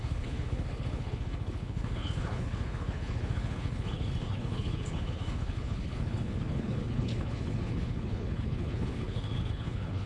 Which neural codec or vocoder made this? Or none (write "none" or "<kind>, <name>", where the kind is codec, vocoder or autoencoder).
codec, HILCodec